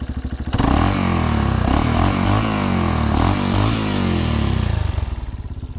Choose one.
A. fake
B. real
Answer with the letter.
B